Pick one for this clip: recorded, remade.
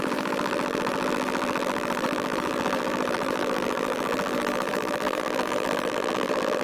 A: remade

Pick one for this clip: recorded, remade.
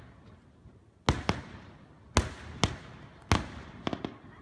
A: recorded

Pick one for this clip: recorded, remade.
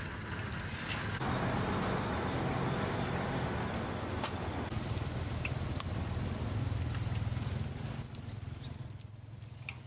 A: recorded